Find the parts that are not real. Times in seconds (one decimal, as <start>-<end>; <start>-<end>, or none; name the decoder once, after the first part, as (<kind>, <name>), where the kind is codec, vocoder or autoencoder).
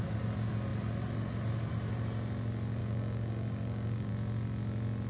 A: 2.8-4.1 (codec, DAC)